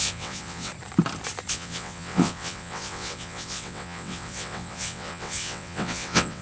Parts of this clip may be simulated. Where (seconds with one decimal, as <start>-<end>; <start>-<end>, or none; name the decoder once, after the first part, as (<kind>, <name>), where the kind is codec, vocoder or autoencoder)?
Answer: 0.0-0.7 (vocoder, WaveNeXt); 1.5-6.4